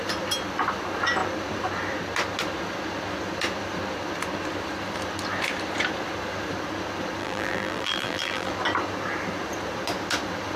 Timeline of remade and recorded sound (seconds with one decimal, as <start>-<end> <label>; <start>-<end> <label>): 0.0-7.2 recorded; 7.2-8.5 remade; 8.5-10.6 recorded